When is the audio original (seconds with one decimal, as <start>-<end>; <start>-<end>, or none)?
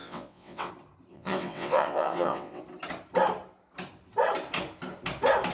0.7-1.1; 2.6-5.5